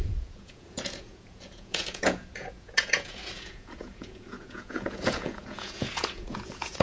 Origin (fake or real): fake